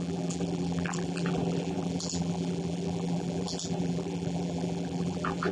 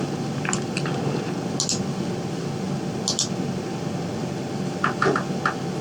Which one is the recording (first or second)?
second